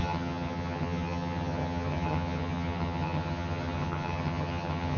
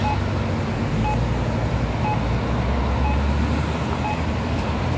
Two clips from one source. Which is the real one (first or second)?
second